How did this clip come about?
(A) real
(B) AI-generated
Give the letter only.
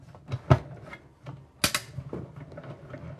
A